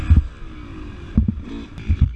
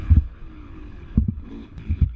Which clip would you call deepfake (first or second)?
second